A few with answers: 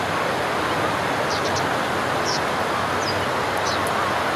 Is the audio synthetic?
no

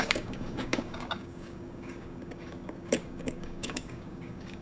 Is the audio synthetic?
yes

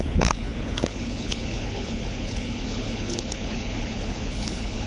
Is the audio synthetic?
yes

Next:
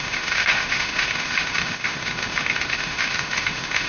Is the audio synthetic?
yes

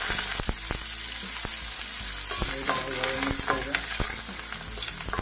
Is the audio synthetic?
no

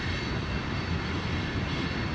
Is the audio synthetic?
no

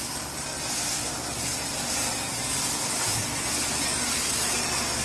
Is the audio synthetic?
no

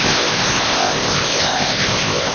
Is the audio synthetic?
yes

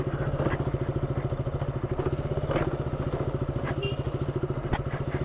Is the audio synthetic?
no